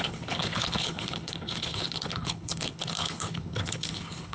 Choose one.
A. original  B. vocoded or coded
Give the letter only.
B